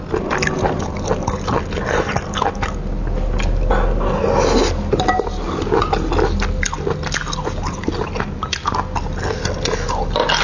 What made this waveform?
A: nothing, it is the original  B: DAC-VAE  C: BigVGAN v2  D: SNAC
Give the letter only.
A